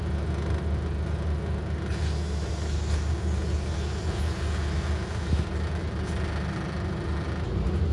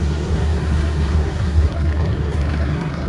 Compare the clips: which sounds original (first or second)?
first